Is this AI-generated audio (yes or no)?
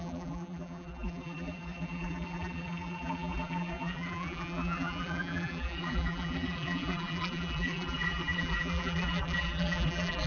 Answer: yes